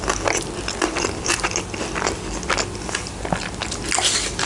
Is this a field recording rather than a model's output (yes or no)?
yes